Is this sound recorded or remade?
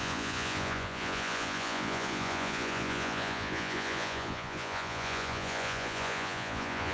remade